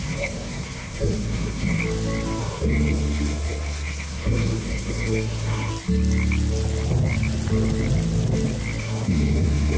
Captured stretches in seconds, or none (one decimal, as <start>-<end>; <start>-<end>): 1.8-2.4; 5.7-8.8